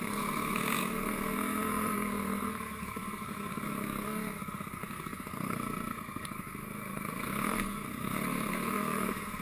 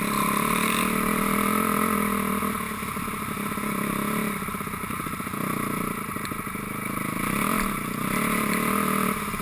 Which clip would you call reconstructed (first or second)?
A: first